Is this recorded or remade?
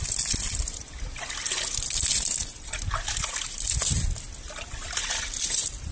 recorded